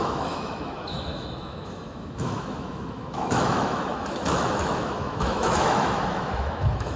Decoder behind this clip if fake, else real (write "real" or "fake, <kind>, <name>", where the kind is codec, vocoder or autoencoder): fake, autoencoder, DAC-VAE